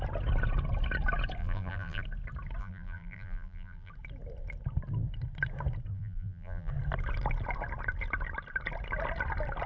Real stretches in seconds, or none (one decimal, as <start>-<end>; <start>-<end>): 0.0-1.4; 2.0-2.6; 3.9-5.9; 6.7-9.7